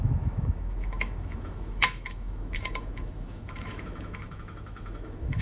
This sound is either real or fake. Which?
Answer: fake